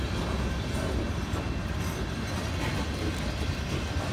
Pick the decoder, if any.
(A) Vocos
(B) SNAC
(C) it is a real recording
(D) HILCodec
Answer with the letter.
C